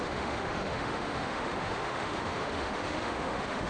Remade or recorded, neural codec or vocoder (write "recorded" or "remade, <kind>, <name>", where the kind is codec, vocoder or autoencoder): remade, autoencoder, DAC-VAE